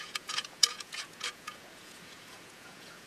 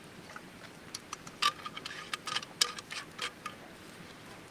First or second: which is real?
second